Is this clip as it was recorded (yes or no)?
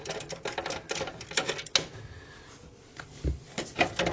yes